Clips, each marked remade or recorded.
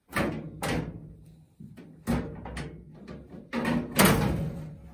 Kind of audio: recorded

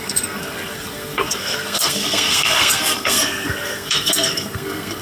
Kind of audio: remade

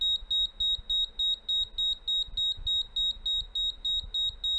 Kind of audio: recorded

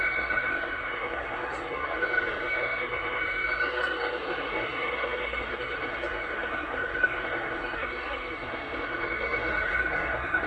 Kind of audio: remade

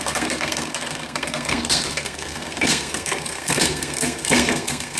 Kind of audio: remade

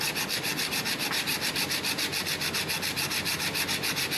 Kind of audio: recorded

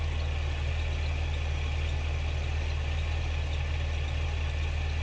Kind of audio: recorded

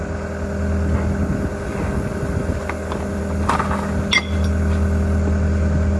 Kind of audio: recorded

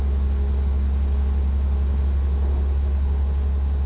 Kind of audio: recorded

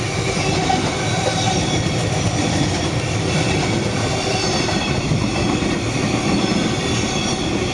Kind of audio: recorded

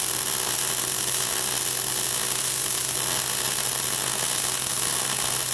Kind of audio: recorded